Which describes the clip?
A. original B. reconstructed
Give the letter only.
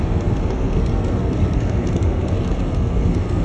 B